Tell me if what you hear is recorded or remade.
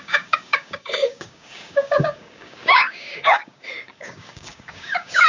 remade